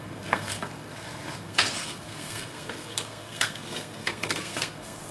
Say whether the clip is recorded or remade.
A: remade